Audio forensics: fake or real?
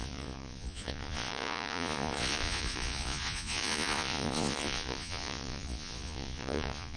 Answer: fake